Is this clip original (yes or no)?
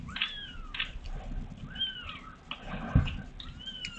yes